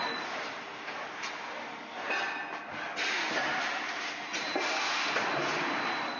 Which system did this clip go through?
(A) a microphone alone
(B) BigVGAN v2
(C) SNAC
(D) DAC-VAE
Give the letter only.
A